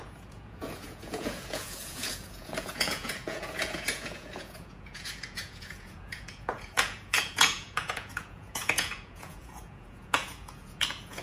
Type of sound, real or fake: fake